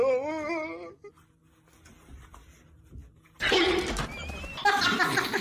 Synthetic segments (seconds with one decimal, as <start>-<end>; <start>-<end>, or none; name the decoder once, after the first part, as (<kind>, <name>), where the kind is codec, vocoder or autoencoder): none